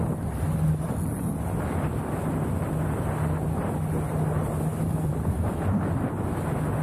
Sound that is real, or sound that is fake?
real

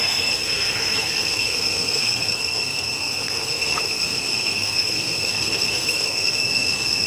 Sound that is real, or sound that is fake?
fake